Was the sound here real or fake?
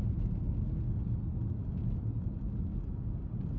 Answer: real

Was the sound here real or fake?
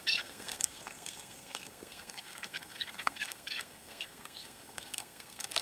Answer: fake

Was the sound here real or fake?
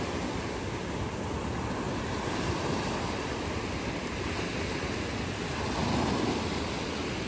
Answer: real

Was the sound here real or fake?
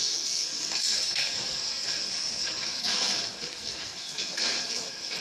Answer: fake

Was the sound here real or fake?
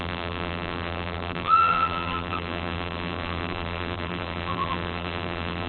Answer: fake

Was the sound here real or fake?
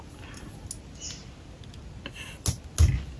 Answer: real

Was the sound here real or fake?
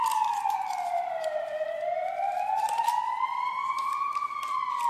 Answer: fake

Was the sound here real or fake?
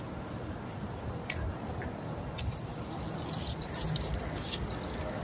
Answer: real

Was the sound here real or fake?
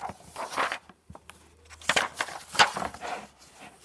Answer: real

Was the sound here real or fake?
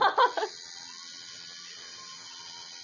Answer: real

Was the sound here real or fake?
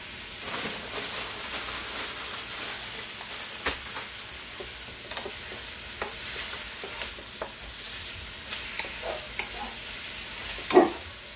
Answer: real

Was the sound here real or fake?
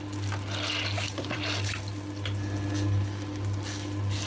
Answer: real